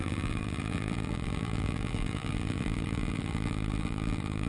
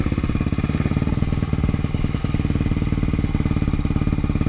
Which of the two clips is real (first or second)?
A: second